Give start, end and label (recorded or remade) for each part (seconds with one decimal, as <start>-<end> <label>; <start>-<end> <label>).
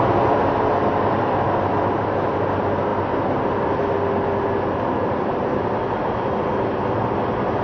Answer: 0.0-7.6 recorded